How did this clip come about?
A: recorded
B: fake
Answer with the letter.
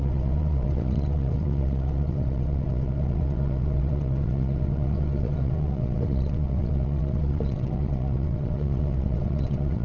B